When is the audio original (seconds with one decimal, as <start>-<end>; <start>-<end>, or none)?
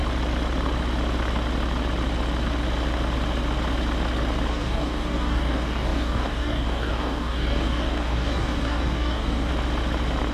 0.0-4.5; 9.5-10.3